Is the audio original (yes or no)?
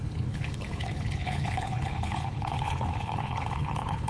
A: no